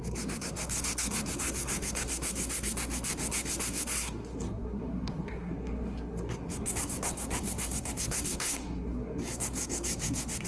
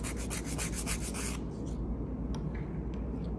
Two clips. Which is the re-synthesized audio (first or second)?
first